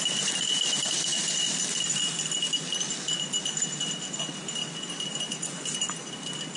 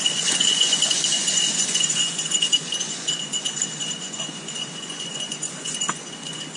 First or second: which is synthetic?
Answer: second